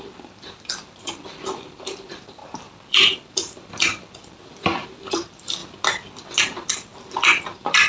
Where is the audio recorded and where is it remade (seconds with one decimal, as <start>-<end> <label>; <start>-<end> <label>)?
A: 0.0-5.6 remade; 5.6-6.4 recorded; 6.4-6.9 remade; 6.9-7.5 recorded; 7.5-7.9 remade